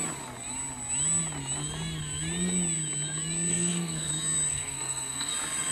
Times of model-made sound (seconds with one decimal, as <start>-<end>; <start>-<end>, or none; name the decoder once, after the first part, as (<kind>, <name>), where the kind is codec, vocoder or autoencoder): 3.5-4.1 (codec, SNAC); 4.5-5.3